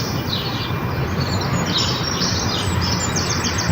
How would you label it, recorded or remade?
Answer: recorded